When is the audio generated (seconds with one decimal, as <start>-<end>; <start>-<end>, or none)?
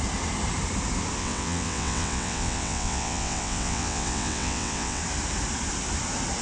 1.2-5.0